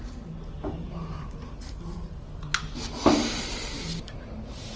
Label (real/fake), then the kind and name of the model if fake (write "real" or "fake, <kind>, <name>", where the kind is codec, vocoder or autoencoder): real